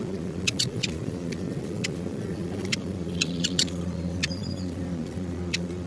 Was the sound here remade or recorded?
remade